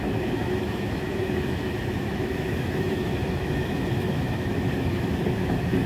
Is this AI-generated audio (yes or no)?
yes